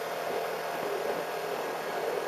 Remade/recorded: recorded